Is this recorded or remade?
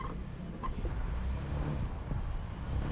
recorded